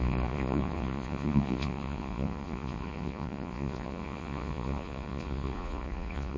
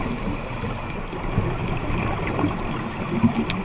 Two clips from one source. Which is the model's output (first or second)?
first